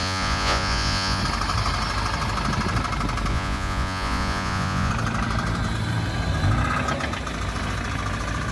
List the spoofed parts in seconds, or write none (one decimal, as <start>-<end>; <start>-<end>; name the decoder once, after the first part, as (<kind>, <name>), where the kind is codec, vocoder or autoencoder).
0.0-1.2 (vocoder, Vocos); 3.3-4.9